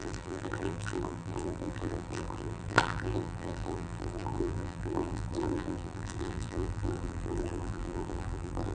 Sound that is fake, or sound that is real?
fake